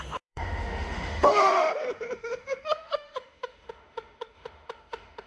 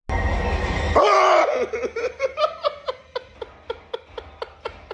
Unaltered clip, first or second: second